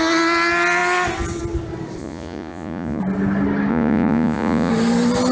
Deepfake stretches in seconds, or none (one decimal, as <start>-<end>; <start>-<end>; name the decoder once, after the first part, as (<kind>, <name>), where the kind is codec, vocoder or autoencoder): 2.0-3.0 (vocoder, Vocos); 3.7-4.7